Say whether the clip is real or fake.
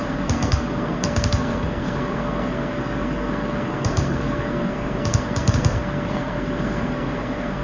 fake